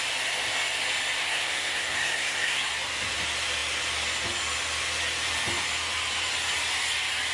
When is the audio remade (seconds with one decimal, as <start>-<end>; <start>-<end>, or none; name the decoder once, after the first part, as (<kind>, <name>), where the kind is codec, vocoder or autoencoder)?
1.2-2.7 (codec, SNAC)